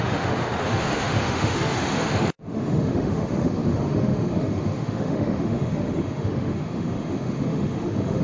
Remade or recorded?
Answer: remade